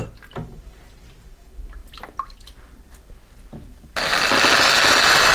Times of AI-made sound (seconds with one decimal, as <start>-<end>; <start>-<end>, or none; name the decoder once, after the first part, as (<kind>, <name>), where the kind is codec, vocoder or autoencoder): none